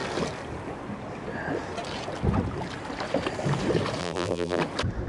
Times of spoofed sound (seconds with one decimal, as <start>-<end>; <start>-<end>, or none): 4.0-4.6